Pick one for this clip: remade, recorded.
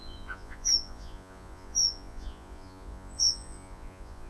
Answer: remade